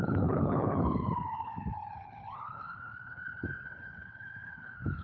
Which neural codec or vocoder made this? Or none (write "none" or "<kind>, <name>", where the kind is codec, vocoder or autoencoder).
codec, HILCodec